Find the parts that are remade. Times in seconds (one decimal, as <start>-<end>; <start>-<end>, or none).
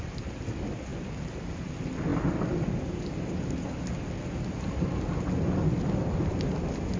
0.9-1.7